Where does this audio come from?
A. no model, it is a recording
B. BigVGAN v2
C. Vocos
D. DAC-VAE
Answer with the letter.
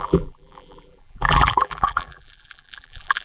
B